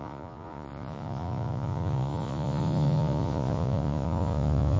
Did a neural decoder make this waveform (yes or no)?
yes